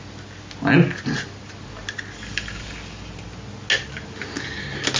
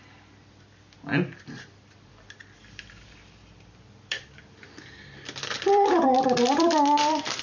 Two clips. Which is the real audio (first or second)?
first